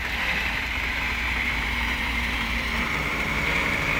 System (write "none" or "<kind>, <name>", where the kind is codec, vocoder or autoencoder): vocoder, BigVGAN v2